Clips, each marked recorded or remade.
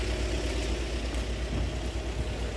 recorded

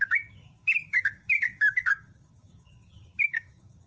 remade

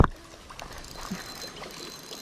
recorded